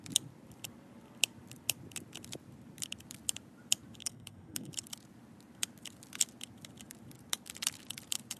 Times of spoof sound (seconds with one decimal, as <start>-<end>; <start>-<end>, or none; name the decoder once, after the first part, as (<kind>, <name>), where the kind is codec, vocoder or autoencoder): 4.0-4.7 (codec, SNAC)